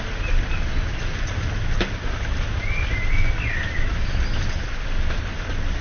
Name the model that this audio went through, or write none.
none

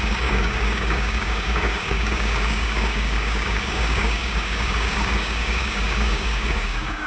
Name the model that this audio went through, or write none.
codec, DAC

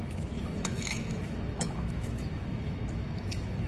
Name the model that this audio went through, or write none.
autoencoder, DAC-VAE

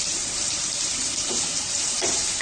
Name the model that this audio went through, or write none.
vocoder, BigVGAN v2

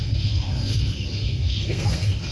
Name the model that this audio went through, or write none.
codec, SNAC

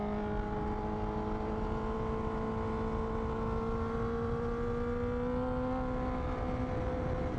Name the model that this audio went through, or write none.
none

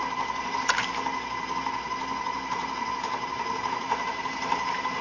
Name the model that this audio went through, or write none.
none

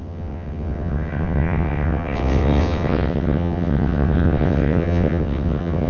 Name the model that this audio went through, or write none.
vocoder, WaveNeXt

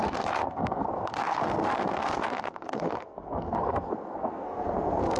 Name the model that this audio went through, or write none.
codec, SNAC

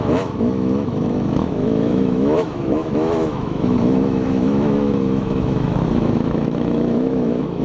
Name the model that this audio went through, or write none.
autoencoder, DAC-VAE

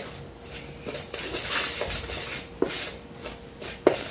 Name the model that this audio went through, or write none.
none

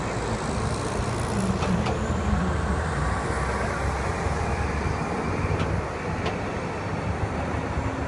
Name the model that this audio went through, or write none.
none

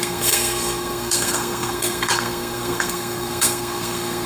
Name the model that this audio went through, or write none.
codec, SNAC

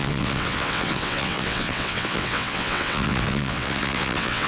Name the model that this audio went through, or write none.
vocoder, WaveNeXt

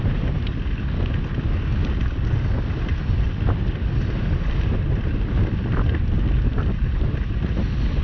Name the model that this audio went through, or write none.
none